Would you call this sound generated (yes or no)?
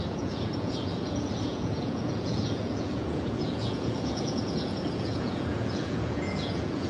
yes